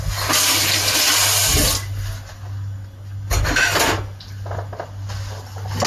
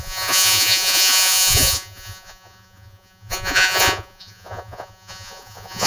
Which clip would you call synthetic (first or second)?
second